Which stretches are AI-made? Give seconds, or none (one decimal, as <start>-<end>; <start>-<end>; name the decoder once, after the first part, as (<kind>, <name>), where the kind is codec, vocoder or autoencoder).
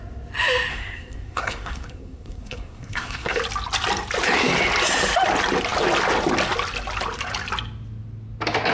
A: 0.7-3.4 (codec, SNAC)